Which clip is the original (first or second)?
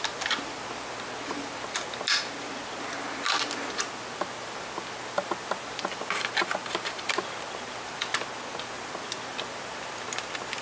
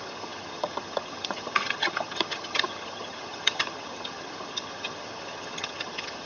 first